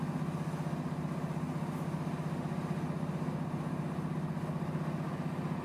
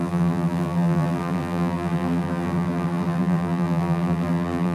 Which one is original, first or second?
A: first